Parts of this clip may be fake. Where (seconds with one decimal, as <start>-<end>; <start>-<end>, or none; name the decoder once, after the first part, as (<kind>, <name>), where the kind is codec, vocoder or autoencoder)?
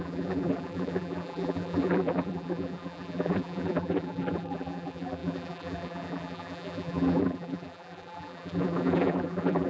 0.0-9.7 (vocoder, BigVGAN v2)